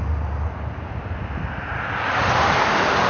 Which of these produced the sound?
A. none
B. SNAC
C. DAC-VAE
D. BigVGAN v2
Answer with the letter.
A